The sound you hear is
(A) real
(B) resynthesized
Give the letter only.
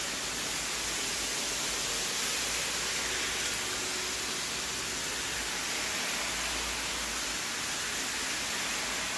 A